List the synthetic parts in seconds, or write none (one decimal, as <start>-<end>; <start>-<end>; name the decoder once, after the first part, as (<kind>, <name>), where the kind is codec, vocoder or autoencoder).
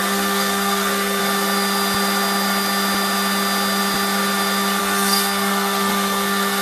0.0-1.2 (codec, SNAC); 4.8-6.6